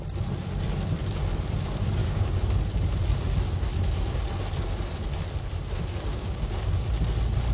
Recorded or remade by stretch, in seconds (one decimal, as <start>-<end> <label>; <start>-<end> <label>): 0.0-2.0 recorded; 2.0-2.5 remade; 2.5-6.1 recorded; 6.1-6.9 remade; 6.9-7.5 recorded